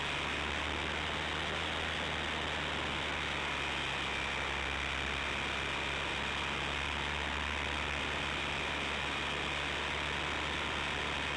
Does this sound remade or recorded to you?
recorded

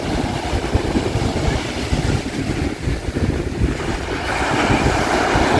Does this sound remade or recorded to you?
recorded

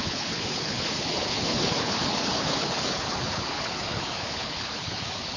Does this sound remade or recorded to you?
remade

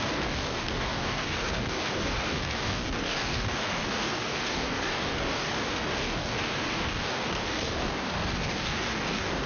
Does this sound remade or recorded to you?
remade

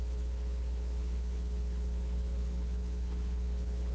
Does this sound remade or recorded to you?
remade